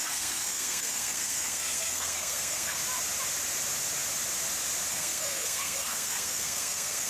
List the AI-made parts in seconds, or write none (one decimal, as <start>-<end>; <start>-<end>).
0.0-2.8; 4.9-7.1